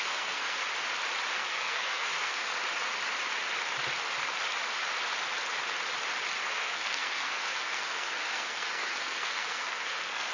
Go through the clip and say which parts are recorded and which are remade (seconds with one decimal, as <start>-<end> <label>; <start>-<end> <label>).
0.0-0.6 remade; 0.6-1.3 recorded; 1.3-2.5 remade; 2.5-6.5 recorded; 6.5-10.3 remade